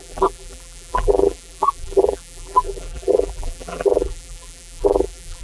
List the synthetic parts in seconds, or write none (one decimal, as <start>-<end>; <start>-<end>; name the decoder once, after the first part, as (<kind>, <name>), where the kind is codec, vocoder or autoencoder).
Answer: 0.0-5.4 (vocoder, BigVGAN v2)